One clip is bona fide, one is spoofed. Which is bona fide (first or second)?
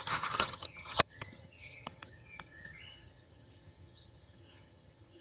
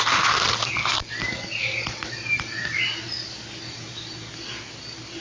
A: second